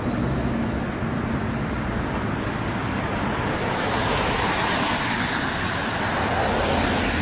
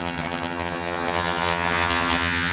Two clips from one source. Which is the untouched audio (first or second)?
first